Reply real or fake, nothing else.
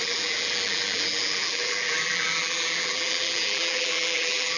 fake